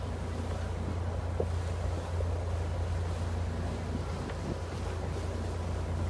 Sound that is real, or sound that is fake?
real